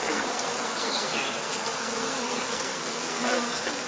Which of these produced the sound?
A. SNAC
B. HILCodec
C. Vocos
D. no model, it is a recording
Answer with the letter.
A